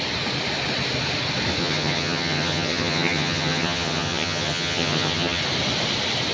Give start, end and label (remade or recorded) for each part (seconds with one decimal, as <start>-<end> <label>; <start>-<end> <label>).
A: 0.0-1.6 recorded; 1.6-5.4 remade; 5.4-6.3 recorded